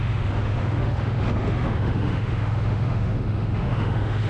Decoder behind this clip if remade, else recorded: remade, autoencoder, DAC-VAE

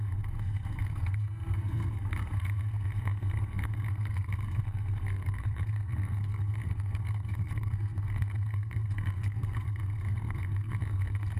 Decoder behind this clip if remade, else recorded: remade, codec, SNAC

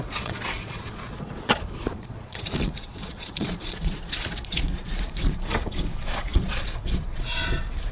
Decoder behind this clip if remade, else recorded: remade, vocoder, Vocos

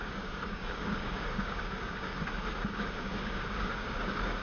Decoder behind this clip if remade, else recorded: remade, codec, DAC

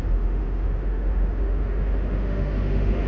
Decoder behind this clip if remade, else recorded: remade, autoencoder, DAC-VAE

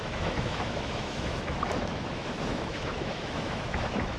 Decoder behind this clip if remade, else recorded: remade, autoencoder, DAC-VAE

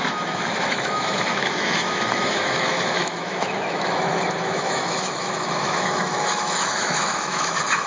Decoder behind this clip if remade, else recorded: remade, autoencoder, DAC-VAE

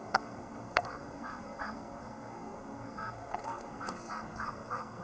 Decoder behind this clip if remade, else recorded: remade, codec, SNAC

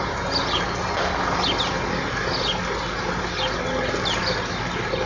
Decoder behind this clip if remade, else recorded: recorded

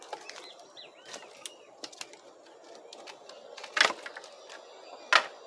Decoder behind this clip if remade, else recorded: recorded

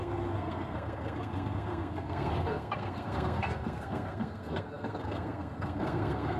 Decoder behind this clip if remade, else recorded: remade, codec, SNAC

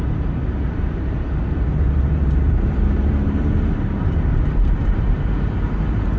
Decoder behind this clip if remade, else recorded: remade, vocoder, BigVGAN v2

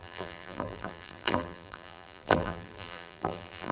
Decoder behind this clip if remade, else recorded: remade, vocoder, BigVGAN v2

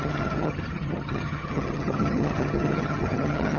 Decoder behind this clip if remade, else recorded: remade, vocoder, HiFi-GAN